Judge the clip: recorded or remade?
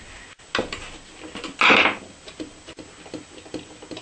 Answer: recorded